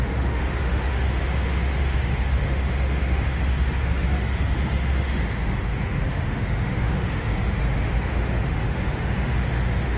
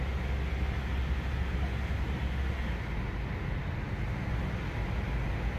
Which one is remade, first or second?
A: first